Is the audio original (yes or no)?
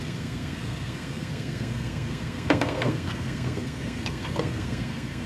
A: no